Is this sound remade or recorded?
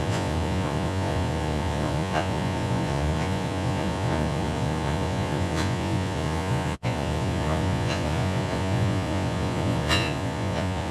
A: remade